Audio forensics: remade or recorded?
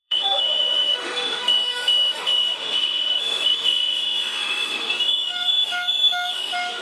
remade